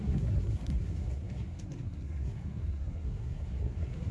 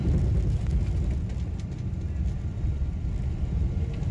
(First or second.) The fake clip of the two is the first